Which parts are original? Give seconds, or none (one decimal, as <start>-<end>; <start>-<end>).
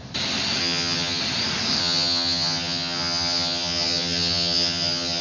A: 0.0-0.6; 1.2-1.8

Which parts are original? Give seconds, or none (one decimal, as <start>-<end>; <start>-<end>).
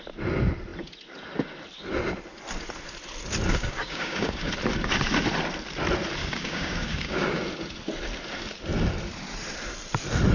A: 0.0-3.5; 4.5-6.2; 7.4-10.3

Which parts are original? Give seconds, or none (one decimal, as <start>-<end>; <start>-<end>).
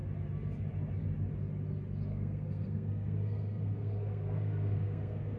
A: 0.0-2.1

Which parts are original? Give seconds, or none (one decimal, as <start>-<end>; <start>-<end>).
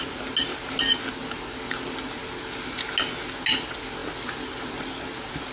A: 0.0-5.5